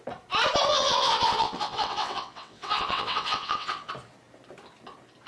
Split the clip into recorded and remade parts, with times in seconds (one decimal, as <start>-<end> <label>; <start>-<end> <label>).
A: 0.0-0.7 recorded; 0.7-3.9 remade; 3.9-5.3 recorded